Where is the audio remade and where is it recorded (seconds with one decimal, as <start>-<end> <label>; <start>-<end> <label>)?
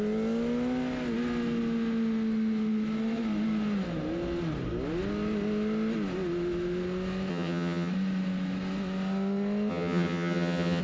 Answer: 0.0-7.3 recorded; 7.3-7.9 remade; 7.9-9.7 recorded; 9.7-10.8 remade